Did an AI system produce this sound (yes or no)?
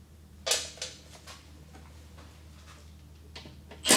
no